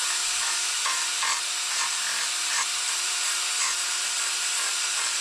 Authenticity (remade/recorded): recorded